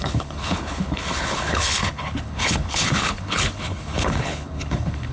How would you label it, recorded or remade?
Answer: remade